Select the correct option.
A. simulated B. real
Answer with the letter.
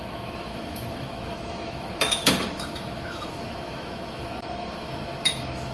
A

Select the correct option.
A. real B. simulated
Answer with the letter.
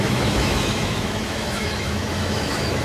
B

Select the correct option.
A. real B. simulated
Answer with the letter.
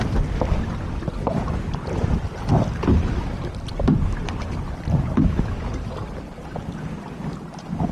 A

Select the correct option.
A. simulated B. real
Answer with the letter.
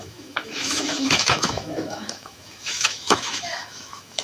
A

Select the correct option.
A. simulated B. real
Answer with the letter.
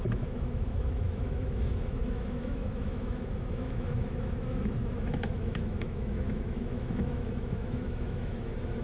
A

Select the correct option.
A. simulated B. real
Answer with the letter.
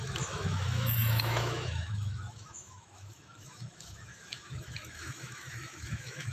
A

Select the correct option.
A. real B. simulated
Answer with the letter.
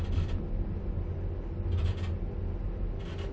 A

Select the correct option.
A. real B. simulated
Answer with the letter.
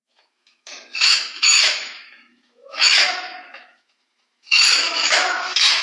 B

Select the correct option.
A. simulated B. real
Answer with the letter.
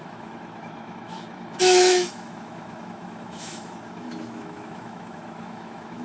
A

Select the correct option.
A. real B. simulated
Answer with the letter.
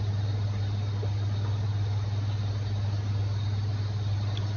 A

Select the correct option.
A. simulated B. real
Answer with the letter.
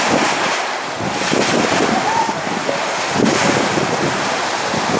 B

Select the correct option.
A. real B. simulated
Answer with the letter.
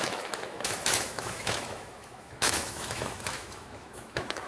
B